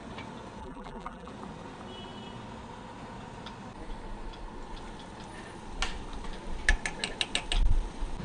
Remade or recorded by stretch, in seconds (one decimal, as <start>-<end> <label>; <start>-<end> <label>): 0.0-0.6 recorded; 0.6-1.3 remade; 1.3-8.2 recorded